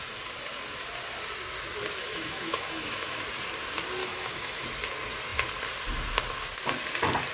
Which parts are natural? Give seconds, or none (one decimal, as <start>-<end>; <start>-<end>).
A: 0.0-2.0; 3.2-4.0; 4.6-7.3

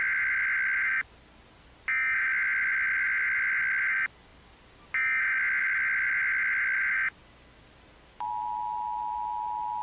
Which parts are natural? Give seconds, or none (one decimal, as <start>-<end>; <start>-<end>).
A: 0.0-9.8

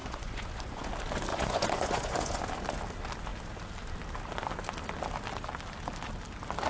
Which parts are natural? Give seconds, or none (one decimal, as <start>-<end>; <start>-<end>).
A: 0.9-1.3; 2.4-6.7

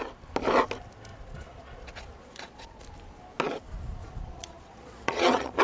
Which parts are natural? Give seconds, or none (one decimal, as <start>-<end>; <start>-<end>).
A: 0.0-1.1; 2.8-4.0

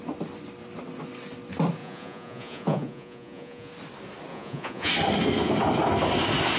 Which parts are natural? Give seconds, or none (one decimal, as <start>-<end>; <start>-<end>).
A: 0.0-1.8; 3.7-4.3; 4.9-6.6